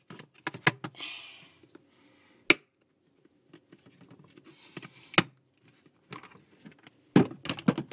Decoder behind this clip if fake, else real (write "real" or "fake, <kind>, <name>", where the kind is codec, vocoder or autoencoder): real